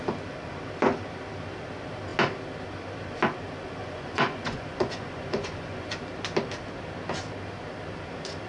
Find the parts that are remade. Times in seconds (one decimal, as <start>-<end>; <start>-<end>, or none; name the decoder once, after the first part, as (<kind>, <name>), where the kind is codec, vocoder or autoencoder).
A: 3.8-5.9 (vocoder, Vocos)